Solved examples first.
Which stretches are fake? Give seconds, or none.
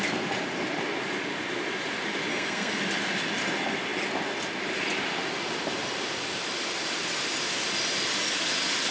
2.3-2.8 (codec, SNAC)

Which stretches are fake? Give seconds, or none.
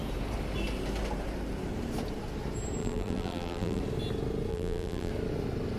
2.8-3.8 (vocoder, BigVGAN v2); 4.5-5.1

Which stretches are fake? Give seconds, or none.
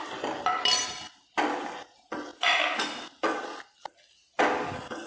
none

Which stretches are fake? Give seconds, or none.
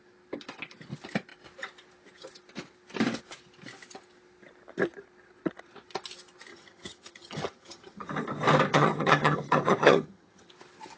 6.5-8.1 (vocoder, HiFi-GAN); 8.7-10.5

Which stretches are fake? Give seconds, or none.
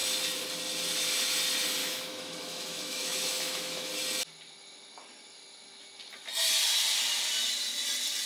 1.8-3.9 (autoencoder, DAC-VAE)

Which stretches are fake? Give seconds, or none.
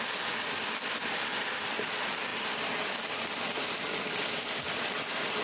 none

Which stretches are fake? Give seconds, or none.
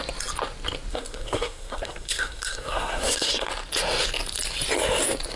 0.9-3.5 (codec, SNAC)